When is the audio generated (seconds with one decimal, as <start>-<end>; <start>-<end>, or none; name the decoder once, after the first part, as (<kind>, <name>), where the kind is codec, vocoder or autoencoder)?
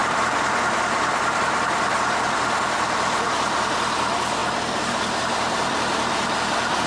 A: none